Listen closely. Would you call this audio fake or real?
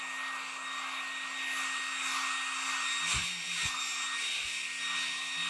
real